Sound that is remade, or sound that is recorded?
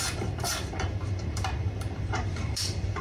remade